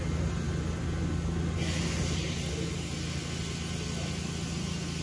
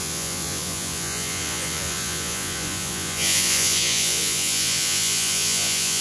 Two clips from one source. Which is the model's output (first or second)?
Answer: second